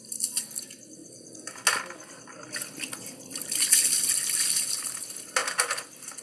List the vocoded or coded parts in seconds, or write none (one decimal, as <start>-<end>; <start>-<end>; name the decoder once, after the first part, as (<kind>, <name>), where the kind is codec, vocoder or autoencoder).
none